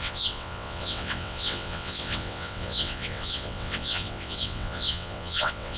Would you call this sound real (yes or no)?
no